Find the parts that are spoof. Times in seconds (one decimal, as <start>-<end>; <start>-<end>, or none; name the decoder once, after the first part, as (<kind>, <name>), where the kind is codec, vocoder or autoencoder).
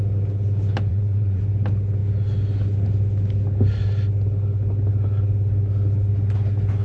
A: 0.9-1.4 (vocoder, Vocos)